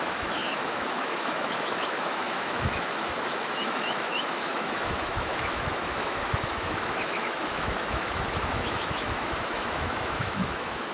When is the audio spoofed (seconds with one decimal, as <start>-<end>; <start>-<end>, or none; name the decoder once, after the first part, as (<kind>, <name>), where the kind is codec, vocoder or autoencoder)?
0.0-10.9 (autoencoder, DAC-VAE)